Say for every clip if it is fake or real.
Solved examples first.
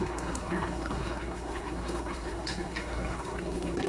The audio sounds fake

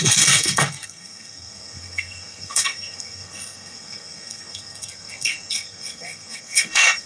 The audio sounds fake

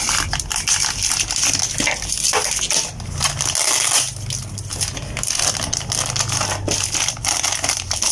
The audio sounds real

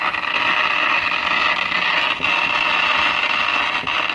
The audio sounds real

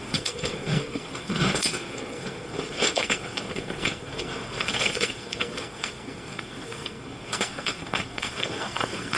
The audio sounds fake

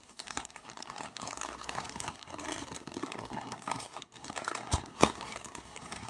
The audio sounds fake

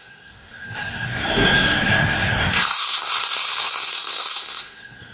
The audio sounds fake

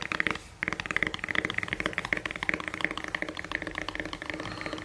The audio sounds real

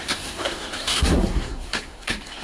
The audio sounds fake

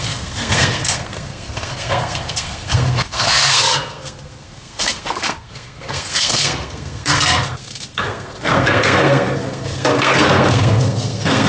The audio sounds fake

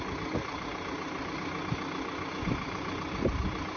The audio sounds real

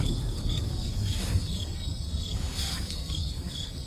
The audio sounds fake